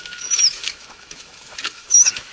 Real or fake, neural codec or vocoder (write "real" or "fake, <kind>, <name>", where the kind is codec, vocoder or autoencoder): fake, autoencoder, DAC-VAE